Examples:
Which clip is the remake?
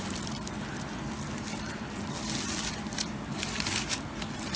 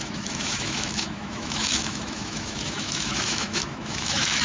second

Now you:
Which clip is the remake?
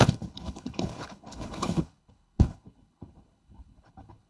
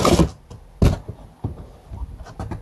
first